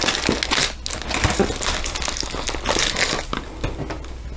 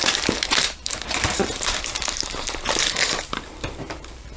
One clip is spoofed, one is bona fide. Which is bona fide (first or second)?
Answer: first